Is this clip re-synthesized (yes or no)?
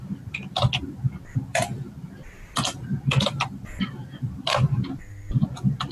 yes